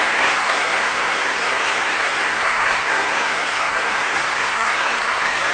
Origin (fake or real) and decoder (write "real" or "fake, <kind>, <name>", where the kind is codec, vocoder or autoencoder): fake, codec, SNAC